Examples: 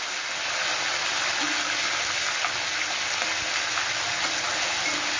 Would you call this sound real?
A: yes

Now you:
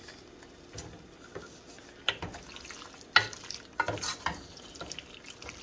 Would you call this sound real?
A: yes